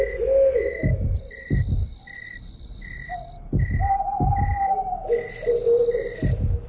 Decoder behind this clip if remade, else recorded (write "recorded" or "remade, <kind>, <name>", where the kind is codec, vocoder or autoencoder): recorded